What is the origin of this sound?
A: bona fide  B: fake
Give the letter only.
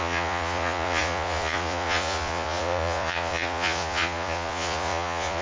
B